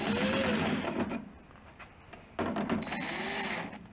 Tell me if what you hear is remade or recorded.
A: recorded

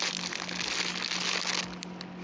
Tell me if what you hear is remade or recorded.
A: recorded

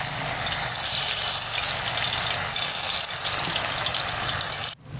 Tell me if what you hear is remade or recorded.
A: recorded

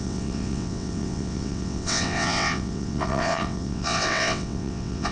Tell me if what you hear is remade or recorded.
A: remade